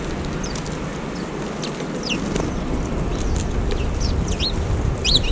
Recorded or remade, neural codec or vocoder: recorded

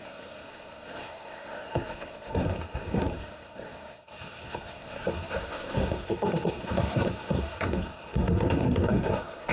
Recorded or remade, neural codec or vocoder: remade, codec, SNAC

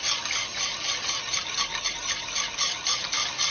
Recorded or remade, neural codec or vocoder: recorded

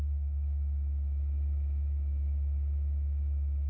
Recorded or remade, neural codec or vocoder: remade, autoencoder, DAC-VAE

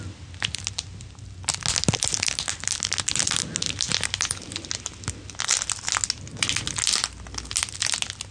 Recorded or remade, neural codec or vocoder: recorded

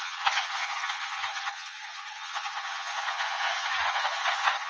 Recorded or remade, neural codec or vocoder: remade, vocoder, HiFi-GAN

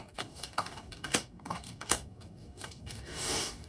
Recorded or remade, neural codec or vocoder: remade, codec, DAC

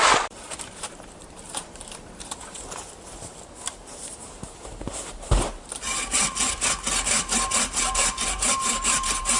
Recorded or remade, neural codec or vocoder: remade, vocoder, BigVGAN v2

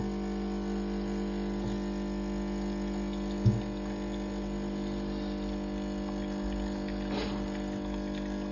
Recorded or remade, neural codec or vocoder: recorded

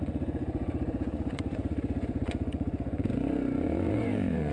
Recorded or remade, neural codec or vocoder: remade, vocoder, Vocos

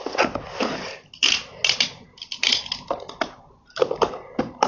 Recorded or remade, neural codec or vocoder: recorded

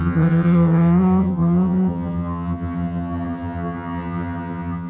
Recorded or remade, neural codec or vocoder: remade, vocoder, HiFi-GAN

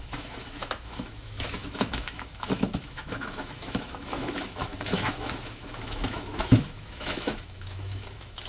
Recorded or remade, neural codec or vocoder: remade, autoencoder, DAC-VAE